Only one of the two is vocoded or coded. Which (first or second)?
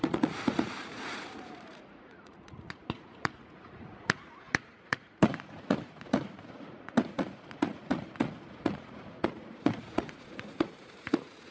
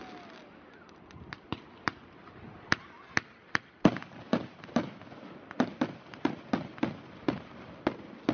first